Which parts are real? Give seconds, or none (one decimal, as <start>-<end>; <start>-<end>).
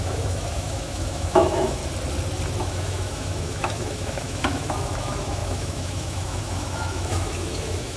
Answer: 1.8-2.6